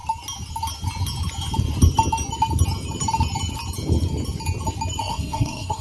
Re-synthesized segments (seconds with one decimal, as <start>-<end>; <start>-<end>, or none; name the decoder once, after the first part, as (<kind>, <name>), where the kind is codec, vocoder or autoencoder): 5.0-5.8 (codec, SNAC)